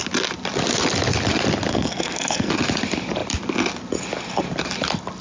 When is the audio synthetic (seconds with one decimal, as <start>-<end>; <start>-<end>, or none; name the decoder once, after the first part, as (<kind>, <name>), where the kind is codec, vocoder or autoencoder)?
1.7-2.5 (codec, SNAC)